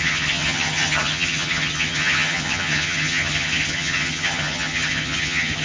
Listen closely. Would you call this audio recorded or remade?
remade